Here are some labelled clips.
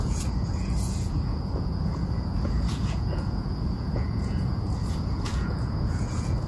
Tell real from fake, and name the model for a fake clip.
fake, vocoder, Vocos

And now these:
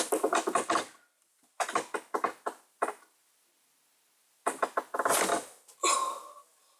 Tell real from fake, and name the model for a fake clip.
real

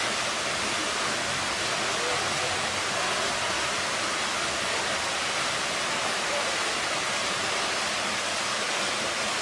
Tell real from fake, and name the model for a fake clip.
real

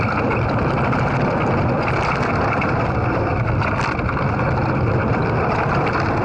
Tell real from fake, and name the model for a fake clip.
real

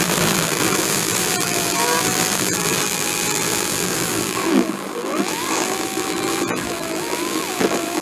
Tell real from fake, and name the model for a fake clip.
fake, vocoder, BigVGAN v2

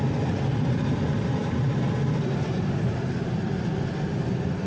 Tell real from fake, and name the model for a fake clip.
fake, vocoder, BigVGAN v2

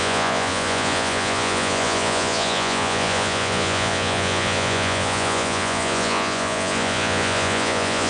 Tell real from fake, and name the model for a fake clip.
fake, vocoder, Vocos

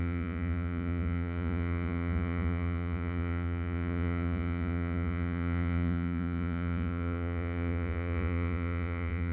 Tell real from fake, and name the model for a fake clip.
fake, vocoder, Vocos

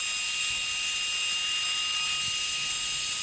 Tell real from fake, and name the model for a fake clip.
real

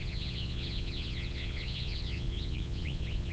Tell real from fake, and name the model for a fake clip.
fake, vocoder, Vocos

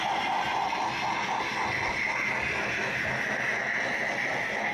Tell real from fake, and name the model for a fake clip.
real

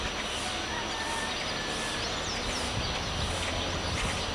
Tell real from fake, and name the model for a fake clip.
real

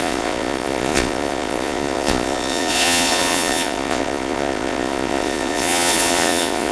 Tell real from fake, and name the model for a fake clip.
fake, vocoder, Vocos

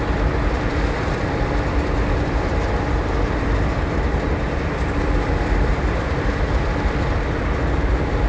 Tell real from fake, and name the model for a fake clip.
fake, vocoder, BigVGAN v2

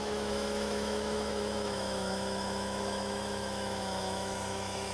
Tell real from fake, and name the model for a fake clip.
fake, autoencoder, DAC-VAE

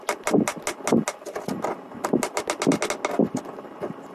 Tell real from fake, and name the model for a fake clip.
real